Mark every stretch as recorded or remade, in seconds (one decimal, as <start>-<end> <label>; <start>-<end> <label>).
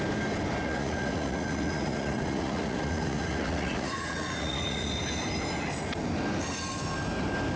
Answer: 0.0-0.6 recorded; 0.6-4.9 remade; 4.9-7.6 recorded